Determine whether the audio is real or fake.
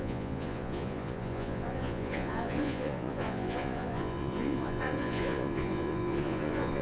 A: fake